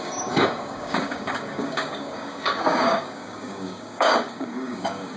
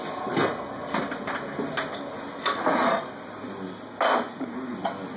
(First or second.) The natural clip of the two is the second